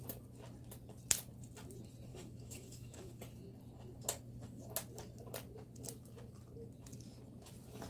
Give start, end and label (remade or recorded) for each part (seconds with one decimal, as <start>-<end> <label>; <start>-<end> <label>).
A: 0.0-2.1 recorded; 2.1-3.2 remade; 3.2-7.9 recorded